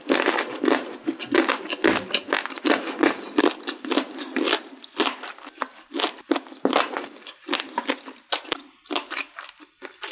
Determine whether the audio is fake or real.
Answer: real